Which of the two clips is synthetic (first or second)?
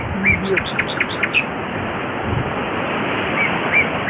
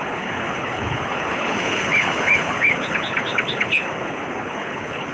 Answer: second